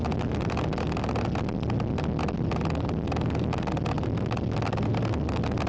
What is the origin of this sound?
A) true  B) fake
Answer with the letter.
A